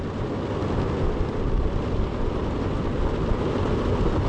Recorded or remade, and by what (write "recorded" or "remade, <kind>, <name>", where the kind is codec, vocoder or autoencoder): recorded